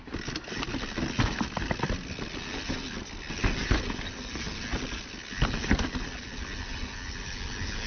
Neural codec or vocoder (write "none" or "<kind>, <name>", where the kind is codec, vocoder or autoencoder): none